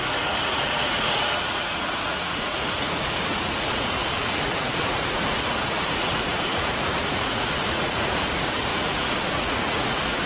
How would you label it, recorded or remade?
remade